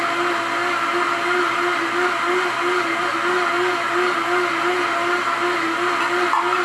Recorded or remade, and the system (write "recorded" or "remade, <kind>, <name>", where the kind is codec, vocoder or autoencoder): recorded